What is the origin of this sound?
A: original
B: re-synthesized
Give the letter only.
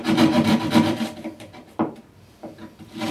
B